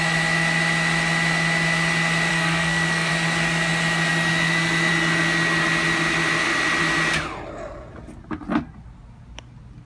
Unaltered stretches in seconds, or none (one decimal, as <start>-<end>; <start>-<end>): 0.0-2.3; 3.1-9.8